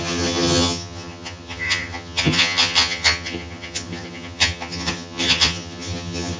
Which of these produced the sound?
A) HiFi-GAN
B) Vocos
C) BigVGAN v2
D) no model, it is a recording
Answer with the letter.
A